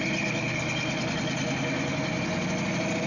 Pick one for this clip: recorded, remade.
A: recorded